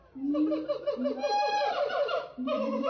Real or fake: real